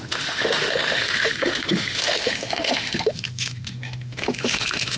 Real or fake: fake